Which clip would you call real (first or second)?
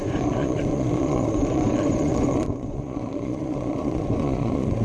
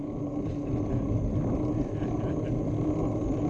second